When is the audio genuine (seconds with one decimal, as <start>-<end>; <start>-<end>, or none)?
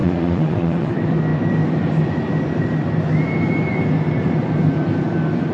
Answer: 0.9-5.5